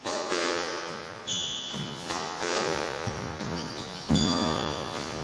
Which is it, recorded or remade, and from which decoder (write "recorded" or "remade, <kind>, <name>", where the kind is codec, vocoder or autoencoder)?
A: remade, vocoder, Vocos